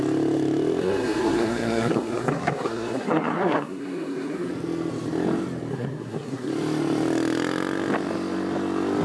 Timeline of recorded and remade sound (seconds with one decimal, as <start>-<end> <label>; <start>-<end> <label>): 0.0-0.8 recorded; 0.8-4.5 remade; 4.5-5.7 recorded; 5.7-6.5 remade; 6.5-9.0 recorded